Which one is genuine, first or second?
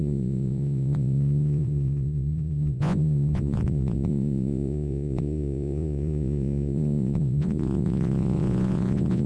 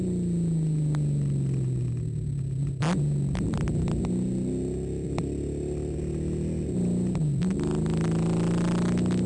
second